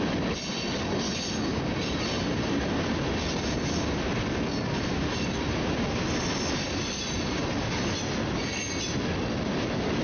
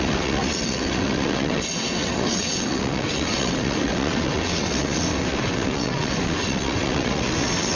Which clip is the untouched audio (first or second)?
first